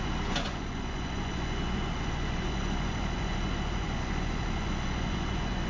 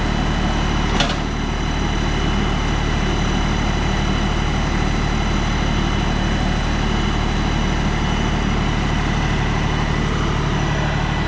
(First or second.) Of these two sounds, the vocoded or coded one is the first